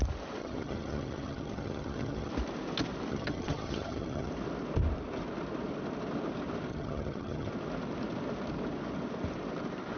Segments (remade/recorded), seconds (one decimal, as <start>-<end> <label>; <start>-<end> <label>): 0.0-0.4 recorded; 0.4-2.3 remade; 2.3-3.1 recorded; 3.1-4.3 remade; 4.3-6.7 recorded; 6.7-7.5 remade; 7.5-10.0 recorded